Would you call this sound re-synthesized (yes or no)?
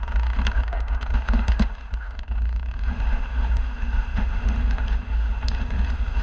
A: yes